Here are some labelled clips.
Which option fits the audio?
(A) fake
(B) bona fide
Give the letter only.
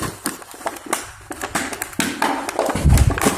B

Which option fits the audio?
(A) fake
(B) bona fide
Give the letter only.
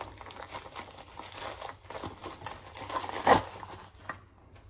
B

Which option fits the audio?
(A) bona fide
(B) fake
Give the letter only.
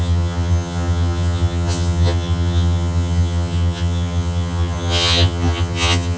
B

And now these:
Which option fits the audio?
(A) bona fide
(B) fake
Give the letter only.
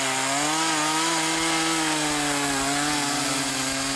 A